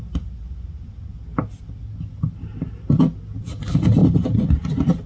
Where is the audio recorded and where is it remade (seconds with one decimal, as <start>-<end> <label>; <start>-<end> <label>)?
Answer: 0.0-5.1 recorded